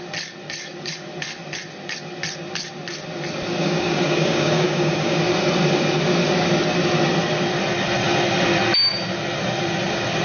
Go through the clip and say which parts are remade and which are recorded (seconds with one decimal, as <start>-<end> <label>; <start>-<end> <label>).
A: 0.0-3.6 recorded; 3.6-5.2 remade; 5.2-10.2 recorded